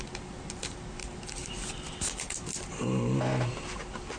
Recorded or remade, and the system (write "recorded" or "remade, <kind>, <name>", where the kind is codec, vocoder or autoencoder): recorded